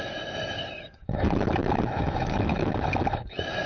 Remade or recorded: remade